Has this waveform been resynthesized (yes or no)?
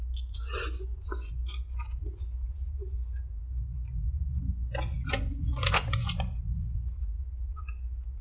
yes